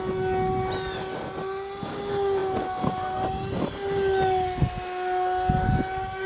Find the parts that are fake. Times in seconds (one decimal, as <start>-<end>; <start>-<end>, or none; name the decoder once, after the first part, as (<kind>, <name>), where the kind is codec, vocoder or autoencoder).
none